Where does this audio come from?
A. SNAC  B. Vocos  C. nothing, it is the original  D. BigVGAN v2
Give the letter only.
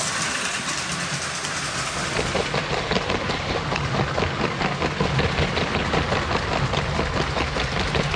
C